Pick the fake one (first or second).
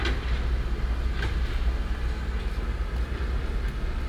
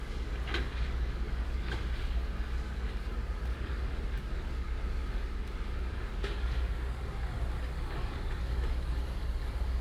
second